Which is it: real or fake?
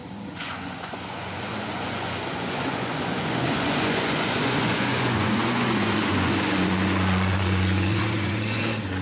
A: fake